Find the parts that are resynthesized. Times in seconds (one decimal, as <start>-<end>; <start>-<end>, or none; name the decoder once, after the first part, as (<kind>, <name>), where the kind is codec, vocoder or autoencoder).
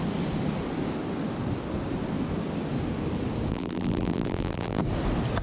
3.5-4.8 (vocoder, BigVGAN v2)